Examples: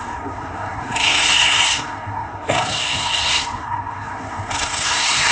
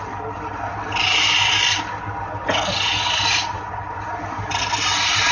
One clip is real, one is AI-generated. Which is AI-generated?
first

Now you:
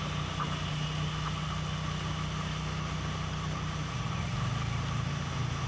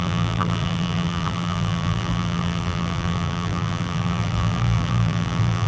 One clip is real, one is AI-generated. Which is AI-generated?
second